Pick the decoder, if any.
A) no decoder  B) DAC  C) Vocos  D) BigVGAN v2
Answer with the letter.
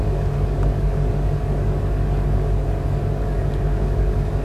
B